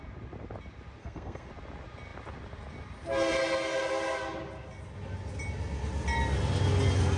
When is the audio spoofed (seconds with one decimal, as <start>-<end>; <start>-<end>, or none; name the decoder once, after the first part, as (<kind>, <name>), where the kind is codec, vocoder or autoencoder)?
1.0-1.5 (codec, SNAC)